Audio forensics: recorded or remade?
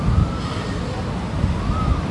recorded